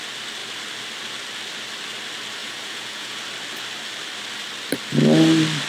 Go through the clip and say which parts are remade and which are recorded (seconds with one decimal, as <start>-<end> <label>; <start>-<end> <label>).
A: 0.0-2.4 recorded; 2.4-3.2 remade; 3.2-5.7 recorded